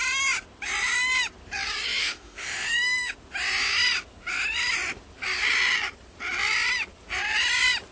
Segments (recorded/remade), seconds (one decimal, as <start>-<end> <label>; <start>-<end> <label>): 0.0-2.0 recorded; 2.0-3.1 remade; 3.1-7.9 recorded

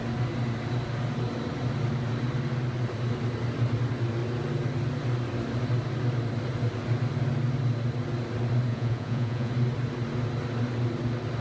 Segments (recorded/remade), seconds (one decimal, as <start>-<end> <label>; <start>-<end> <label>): 0.0-8.7 recorded; 8.7-9.5 remade; 9.5-11.4 recorded

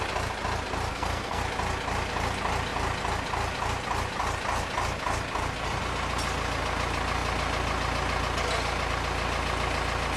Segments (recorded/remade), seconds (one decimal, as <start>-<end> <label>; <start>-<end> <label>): 0.0-0.9 recorded; 0.9-1.4 remade; 1.4-10.2 recorded

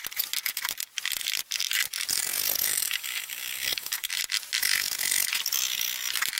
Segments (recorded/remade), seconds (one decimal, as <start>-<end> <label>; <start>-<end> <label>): 0.0-2.7 recorded; 2.7-4.1 remade; 4.1-6.4 recorded